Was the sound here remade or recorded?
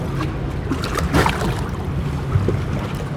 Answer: recorded